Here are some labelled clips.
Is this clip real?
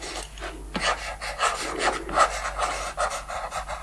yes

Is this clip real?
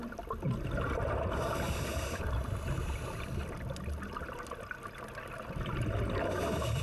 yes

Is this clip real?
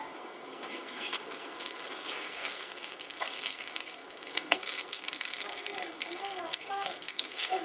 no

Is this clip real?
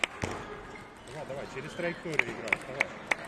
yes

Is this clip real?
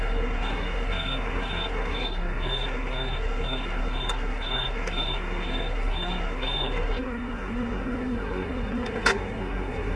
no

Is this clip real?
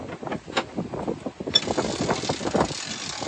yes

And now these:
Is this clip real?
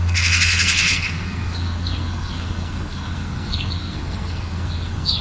no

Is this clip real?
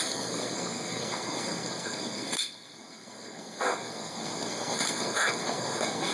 no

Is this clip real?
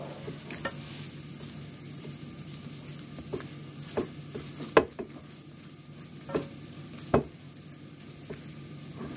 yes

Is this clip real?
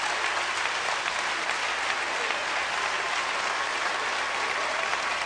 yes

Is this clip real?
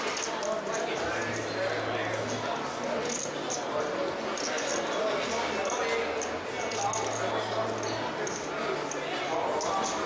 yes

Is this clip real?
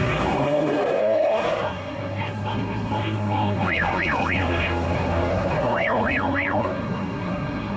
no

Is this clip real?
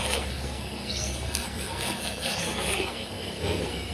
no